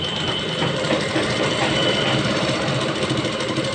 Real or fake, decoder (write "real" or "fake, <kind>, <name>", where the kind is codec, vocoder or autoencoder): fake, vocoder, BigVGAN v2